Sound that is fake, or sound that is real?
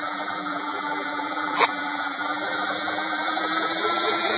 fake